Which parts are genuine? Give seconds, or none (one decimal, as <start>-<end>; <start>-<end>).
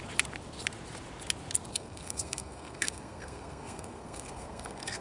0.0-1.7